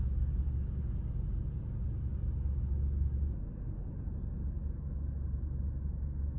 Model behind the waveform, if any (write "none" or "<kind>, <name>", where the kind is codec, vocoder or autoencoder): none